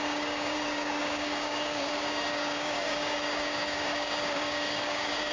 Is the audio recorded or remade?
remade